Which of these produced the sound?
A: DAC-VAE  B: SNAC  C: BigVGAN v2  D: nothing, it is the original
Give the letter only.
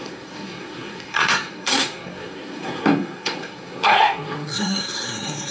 B